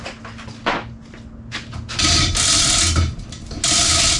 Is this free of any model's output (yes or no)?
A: yes